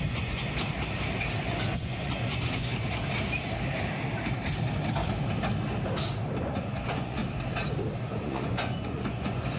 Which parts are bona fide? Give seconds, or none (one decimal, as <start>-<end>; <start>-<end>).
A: 0.4-1.4; 2.7-6.4; 7.2-8.0